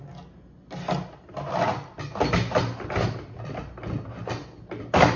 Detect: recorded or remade recorded